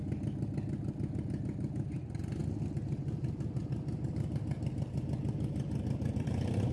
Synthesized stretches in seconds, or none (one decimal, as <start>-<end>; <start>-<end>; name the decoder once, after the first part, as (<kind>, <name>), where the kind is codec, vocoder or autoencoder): none